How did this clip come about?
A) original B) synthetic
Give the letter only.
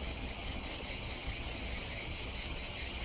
B